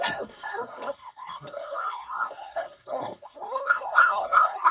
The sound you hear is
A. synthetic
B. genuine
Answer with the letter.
A